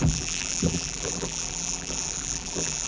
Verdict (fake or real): fake